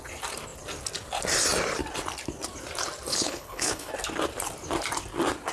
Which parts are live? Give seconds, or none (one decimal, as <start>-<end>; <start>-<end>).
0.0-3.1; 3.9-5.5